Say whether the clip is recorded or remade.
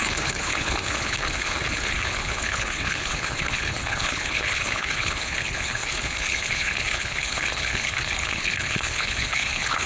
remade